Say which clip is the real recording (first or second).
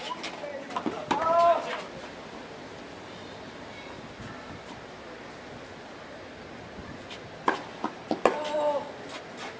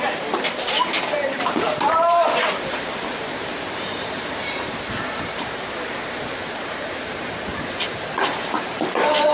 first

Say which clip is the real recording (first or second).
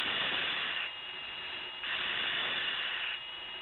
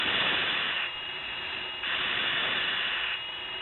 first